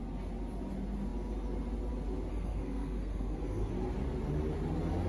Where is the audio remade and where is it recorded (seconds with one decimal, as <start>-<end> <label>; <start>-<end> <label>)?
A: 0.0-2.3 recorded; 2.3-3.7 remade; 3.7-5.1 recorded